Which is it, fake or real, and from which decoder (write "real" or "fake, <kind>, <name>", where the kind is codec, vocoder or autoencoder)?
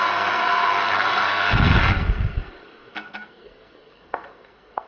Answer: fake, codec, SNAC